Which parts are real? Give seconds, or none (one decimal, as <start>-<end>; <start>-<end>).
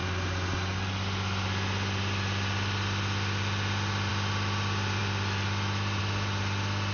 0.0-6.9